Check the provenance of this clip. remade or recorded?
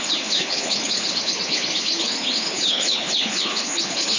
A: remade